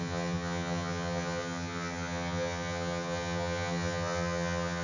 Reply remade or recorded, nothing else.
remade